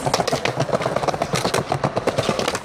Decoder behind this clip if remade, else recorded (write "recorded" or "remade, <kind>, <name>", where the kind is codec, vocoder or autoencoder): recorded